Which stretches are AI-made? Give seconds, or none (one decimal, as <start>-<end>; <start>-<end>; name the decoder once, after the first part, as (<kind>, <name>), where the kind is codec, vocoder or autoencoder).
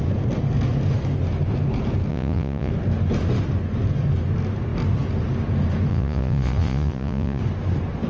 2.1-2.7 (vocoder, Vocos); 5.9-7.4